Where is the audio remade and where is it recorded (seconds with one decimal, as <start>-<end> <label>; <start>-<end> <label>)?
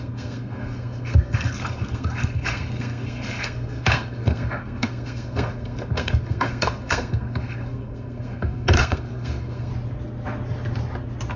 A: 0.0-9.7 remade; 9.7-11.4 recorded